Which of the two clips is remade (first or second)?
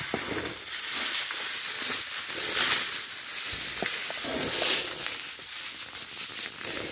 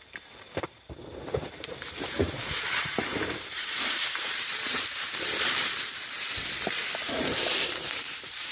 second